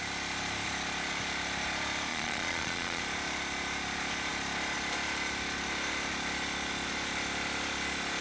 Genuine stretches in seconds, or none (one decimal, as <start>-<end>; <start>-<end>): 0.0-2.1; 3.0-8.2